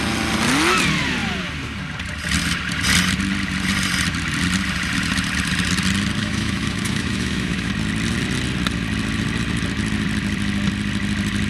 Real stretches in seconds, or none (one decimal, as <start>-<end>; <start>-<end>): 0.0-6.2; 7.7-11.5